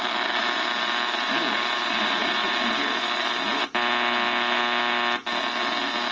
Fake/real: real